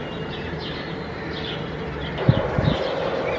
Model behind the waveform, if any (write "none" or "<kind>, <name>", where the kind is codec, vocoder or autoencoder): none